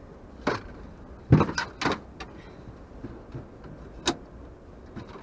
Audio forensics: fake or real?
real